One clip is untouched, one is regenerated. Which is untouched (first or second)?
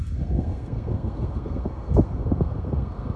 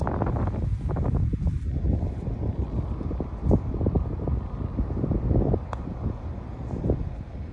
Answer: second